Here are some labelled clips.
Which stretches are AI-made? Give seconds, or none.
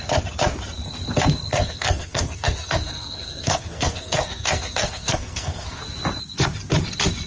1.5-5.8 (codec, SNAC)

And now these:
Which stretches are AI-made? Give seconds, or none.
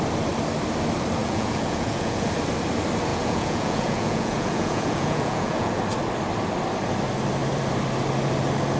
1.2-2.3 (vocoder, Vocos); 3.1-5.8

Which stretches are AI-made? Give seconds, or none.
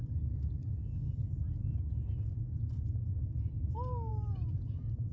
none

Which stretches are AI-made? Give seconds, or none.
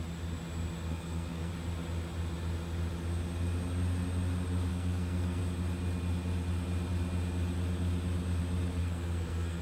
0.9-1.5 (codec, SNAC); 4.7-5.4; 8.8-9.6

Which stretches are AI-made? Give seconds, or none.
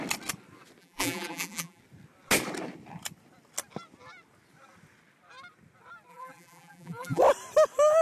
0.8-1.8 (vocoder, BigVGAN v2); 6.1-7.2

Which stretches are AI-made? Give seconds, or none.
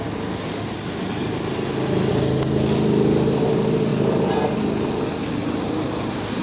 none